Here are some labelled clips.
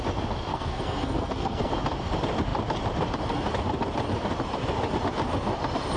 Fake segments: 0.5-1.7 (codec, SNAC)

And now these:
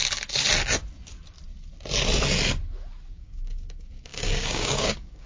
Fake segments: 3.1-5.3 (codec, DAC)

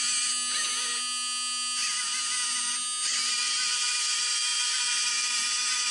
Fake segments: none

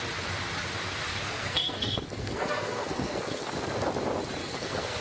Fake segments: 1.1-3.5 (codec, SNAC); 4.4-5.0

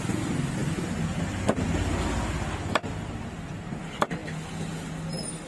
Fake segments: none